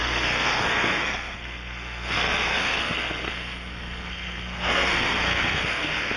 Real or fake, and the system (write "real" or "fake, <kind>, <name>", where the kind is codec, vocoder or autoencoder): fake, codec, SNAC